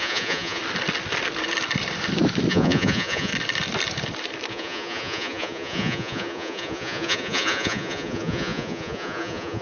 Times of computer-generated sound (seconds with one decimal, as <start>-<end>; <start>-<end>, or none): 0.0-0.6; 2.5-3.3; 4.5-9.6